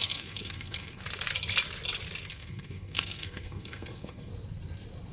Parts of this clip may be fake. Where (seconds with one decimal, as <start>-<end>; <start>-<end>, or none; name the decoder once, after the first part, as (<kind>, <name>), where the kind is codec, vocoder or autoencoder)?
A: 0.0-1.0 (codec, SNAC); 2.3-4.3